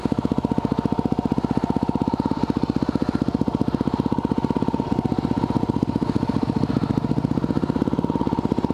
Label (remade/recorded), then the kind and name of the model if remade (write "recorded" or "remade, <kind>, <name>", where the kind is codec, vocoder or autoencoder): recorded